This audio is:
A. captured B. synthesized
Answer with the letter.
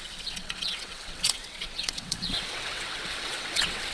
B